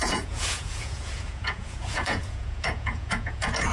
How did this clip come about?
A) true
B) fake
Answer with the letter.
B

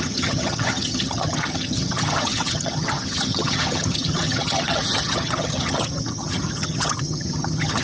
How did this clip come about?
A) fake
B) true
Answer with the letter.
A